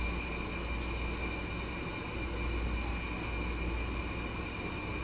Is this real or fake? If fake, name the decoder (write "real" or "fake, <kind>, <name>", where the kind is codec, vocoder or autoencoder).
real